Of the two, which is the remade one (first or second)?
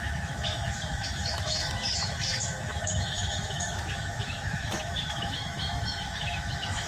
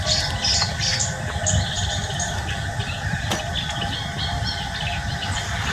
first